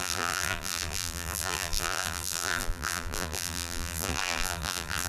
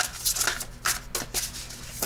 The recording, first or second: second